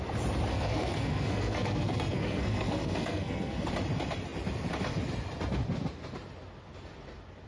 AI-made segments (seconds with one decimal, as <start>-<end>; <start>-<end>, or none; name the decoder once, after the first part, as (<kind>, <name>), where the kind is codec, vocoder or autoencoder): 0.5-3.7 (codec, SNAC)